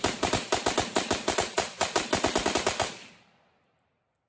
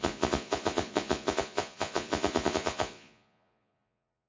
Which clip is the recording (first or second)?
first